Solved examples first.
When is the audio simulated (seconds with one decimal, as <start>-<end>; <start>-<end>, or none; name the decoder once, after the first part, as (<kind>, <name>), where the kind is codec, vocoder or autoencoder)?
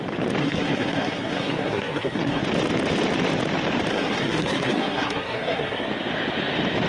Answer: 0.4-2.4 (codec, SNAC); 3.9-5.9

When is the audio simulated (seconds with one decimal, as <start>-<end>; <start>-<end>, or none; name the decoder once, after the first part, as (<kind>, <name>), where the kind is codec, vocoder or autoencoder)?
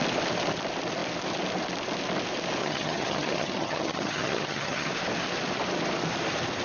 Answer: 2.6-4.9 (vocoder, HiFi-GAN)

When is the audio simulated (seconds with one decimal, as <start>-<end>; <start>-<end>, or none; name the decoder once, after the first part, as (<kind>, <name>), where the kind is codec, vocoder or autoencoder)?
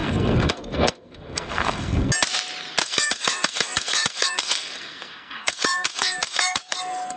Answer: 0.0-2.1 (codec, SNAC); 2.8-7.2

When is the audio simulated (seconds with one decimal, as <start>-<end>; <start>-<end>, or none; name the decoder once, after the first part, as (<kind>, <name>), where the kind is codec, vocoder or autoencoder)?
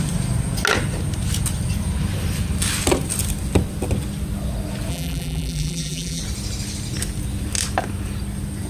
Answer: 4.9-6.2 (vocoder, BigVGAN v2)